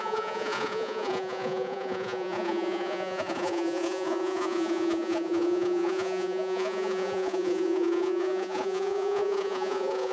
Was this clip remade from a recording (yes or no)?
yes